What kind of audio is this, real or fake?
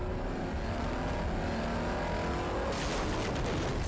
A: real